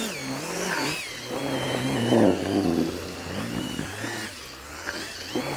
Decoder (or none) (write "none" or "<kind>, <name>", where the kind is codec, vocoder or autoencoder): none